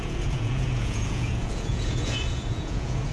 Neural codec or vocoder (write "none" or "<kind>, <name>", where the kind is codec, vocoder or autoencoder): vocoder, Vocos